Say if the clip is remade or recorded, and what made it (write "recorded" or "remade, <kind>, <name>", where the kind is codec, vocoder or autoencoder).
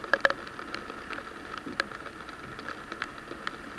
recorded